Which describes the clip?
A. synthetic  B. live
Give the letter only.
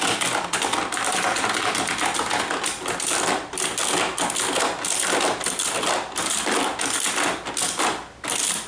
B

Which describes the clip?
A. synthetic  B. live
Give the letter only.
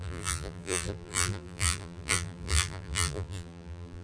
A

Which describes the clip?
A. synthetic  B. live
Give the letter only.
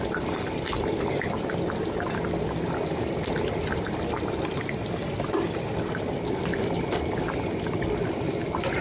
B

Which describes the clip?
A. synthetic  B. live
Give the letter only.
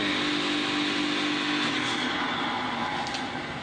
B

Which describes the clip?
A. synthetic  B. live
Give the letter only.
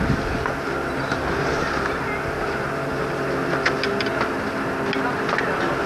B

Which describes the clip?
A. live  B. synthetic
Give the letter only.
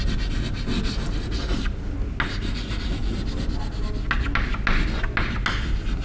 A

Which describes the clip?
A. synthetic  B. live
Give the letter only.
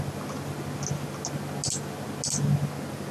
B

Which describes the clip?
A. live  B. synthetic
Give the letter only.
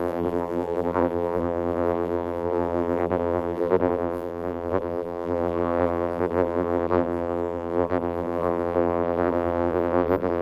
B